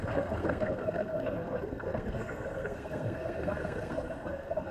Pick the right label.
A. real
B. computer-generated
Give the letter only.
B